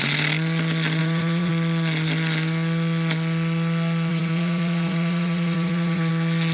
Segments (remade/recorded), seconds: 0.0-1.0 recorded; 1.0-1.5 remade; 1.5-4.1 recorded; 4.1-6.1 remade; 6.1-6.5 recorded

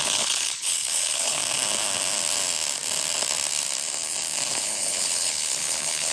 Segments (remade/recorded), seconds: 0.0-1.4 remade; 1.4-4.5 recorded; 4.5-6.1 remade

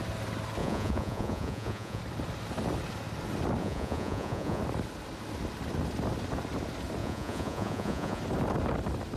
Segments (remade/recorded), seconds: 0.0-0.6 recorded; 0.6-2.0 remade; 2.0-3.6 recorded; 3.6-4.6 remade; 4.6-7.0 recorded; 7.0-8.2 remade; 8.2-9.2 recorded